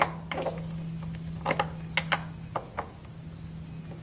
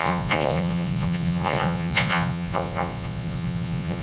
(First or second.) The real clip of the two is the first